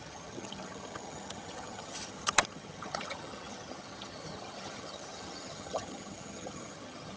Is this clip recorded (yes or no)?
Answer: no